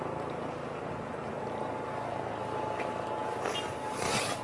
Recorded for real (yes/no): yes